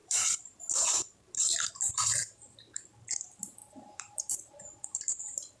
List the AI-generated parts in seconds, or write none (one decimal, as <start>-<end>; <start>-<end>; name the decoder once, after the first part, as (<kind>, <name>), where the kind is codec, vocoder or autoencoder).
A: 0.0-2.2 (vocoder, BigVGAN v2); 3.2-5.6